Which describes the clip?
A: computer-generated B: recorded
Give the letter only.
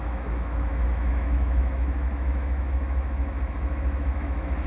A